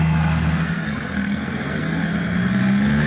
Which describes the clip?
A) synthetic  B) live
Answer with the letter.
A